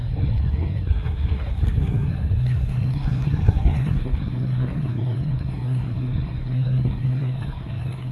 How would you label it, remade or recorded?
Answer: remade